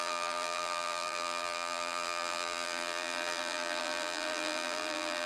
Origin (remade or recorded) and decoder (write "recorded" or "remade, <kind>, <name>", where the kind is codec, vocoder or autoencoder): remade, vocoder, BigVGAN v2